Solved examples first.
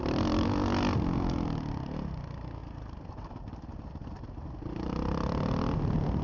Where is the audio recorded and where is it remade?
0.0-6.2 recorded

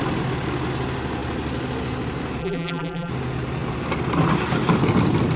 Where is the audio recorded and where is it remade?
0.0-2.4 recorded; 2.4-3.1 remade; 3.1-5.4 recorded